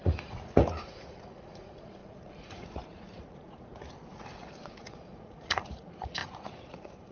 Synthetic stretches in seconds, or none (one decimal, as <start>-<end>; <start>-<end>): 0.0-7.1